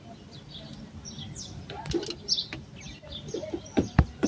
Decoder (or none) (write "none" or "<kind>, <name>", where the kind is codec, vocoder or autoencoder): none